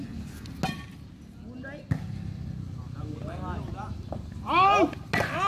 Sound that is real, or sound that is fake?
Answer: real